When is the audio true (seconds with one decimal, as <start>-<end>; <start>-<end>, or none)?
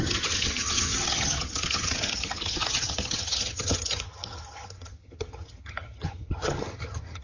none